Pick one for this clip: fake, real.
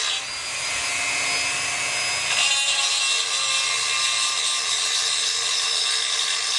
real